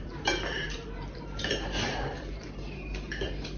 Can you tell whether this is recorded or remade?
remade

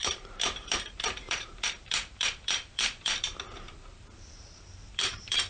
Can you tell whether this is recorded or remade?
remade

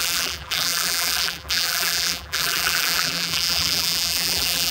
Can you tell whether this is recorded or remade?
remade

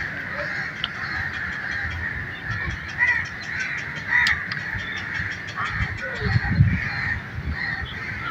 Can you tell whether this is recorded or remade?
recorded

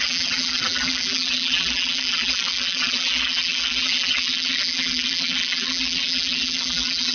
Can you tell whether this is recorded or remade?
remade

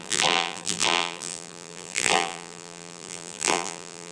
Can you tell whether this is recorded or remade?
remade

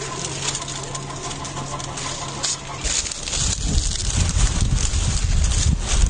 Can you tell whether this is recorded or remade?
recorded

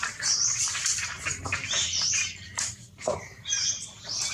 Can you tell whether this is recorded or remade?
remade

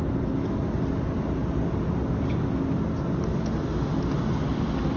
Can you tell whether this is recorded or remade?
recorded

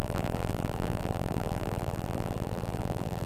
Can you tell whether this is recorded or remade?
remade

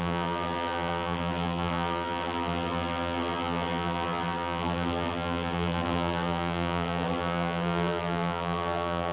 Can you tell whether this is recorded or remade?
remade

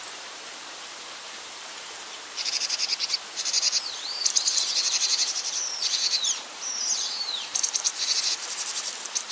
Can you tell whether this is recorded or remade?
remade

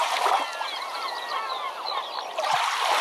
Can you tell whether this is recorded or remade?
remade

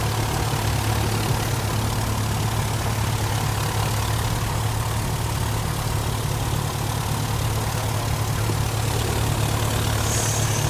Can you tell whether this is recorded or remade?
recorded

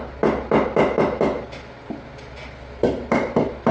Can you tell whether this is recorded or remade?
recorded